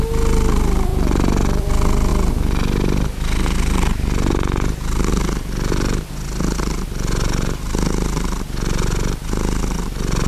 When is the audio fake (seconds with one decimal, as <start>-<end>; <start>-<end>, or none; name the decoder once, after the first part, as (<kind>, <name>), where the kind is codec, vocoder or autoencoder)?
none